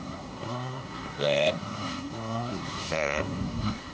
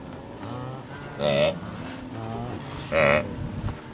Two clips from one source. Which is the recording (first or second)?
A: second